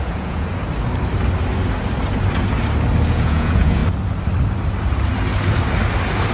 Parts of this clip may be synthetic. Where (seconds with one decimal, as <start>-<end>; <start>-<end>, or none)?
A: 0.0-0.5; 3.1-3.8